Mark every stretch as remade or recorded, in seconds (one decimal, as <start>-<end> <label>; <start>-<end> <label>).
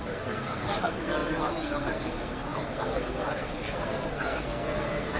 0.0-5.2 remade